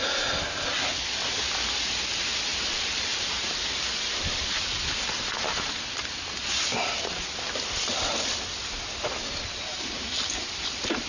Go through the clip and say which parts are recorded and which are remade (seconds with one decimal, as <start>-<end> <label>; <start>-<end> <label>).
0.0-2.5 recorded; 2.5-5.5 remade; 5.5-11.1 recorded

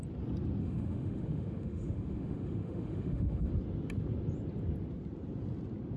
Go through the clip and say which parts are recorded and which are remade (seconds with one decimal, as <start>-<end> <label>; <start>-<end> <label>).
0.0-0.6 recorded; 0.6-3.5 remade; 3.5-6.0 recorded